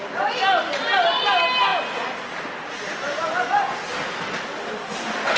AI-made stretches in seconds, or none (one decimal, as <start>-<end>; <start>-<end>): none